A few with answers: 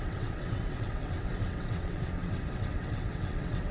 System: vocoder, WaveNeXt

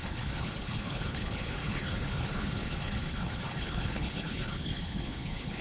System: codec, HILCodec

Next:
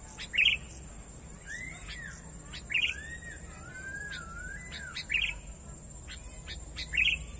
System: none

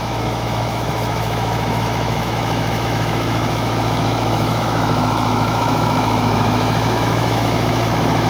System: autoencoder, DAC-VAE